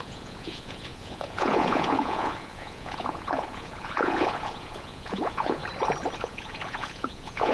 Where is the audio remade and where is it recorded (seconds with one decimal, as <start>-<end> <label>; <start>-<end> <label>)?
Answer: 0.0-5.6 remade; 5.6-6.2 recorded; 6.2-7.5 remade